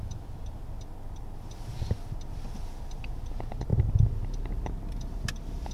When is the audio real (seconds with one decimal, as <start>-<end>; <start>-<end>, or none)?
0.0-5.7